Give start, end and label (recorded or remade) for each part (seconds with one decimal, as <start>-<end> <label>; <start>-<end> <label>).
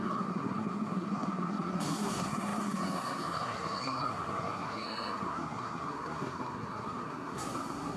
0.0-8.0 remade